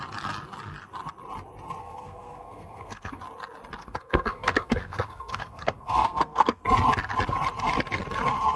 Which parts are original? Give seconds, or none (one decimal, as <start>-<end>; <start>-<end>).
0.0-1.8; 3.2-3.8; 6.6-8.6